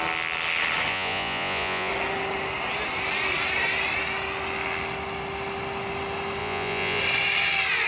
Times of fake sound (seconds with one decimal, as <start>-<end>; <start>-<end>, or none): 0.9-1.9; 6.4-7.0